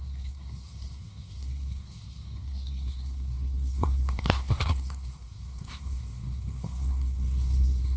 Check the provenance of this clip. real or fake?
fake